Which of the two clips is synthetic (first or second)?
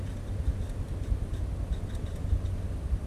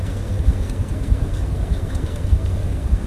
second